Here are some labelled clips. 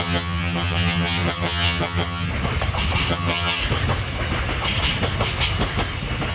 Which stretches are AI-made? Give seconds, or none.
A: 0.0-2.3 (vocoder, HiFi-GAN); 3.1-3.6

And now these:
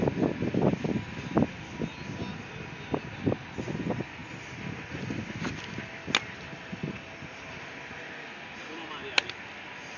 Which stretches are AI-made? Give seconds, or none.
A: none

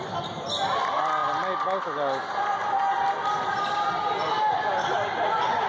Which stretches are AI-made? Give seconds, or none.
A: none

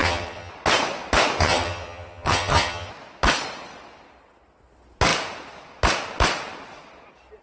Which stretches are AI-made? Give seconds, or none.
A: 0.0-0.5 (vocoder, HiFi-GAN); 1.4-2.9

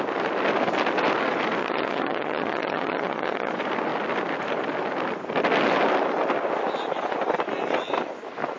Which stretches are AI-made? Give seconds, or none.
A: 1.6-3.5 (vocoder, HiFi-GAN)

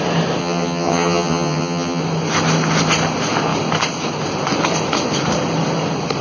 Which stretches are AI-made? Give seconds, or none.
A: 0.4-2.0 (vocoder, HiFi-GAN)

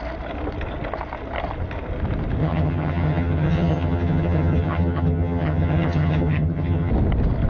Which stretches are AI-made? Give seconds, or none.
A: 2.4-6.9 (vocoder, HiFi-GAN)